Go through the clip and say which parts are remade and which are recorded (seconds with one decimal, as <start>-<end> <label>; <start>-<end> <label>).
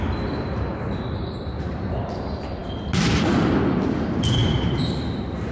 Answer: 0.0-0.7 recorded; 0.7-1.9 remade; 1.9-4.4 recorded; 4.4-5.0 remade; 5.0-5.5 recorded